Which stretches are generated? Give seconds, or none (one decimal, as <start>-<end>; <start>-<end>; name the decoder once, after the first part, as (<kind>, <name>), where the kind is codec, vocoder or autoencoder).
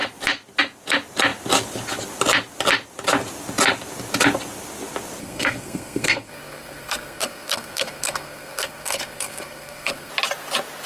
5.2-10.1 (codec, SNAC)